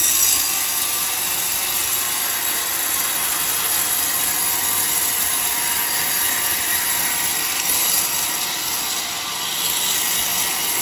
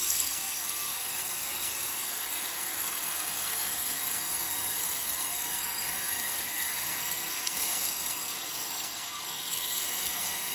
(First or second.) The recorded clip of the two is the first